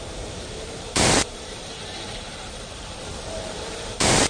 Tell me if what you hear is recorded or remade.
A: remade